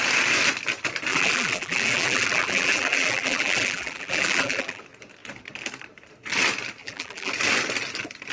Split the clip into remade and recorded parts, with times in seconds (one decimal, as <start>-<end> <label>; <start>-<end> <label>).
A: 0.0-1.1 recorded; 1.1-4.8 remade; 4.8-6.8 recorded; 6.8-7.3 remade; 7.3-8.3 recorded